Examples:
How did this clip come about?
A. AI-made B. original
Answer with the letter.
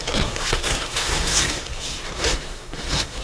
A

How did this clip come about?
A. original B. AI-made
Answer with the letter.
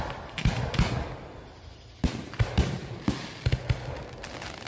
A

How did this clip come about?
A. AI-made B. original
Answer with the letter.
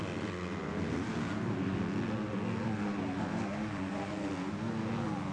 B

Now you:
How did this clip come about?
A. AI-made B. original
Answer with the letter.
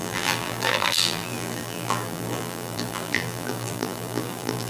A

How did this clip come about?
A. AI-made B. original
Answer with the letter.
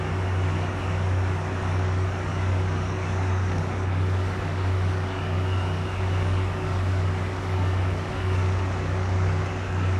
A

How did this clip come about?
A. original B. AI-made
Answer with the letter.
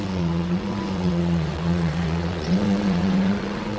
B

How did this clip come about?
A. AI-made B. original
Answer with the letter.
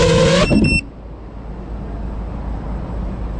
B